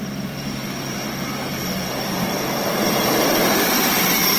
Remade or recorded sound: remade